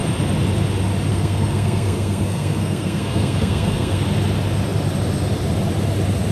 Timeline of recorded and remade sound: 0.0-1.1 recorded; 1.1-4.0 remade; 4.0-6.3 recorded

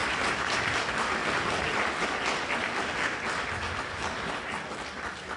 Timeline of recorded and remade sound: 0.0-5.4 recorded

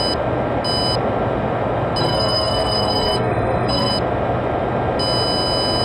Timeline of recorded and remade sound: 0.0-2.0 recorded; 2.0-3.9 remade; 3.9-5.8 recorded

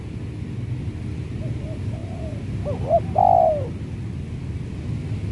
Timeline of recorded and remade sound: 0.0-5.3 recorded